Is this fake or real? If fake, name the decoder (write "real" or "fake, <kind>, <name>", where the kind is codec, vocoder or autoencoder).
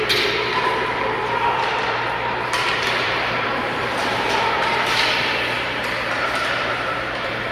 fake, vocoder, BigVGAN v2